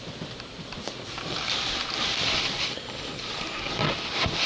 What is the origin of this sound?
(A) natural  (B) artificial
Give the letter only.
A